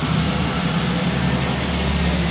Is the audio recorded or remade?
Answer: recorded